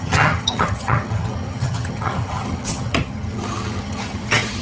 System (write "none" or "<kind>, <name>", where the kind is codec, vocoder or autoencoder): vocoder, HiFi-GAN